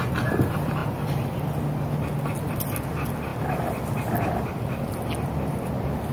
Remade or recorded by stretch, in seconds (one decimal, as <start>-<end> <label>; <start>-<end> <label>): 0.0-6.1 recorded